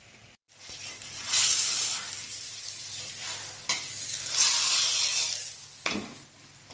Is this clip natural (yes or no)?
yes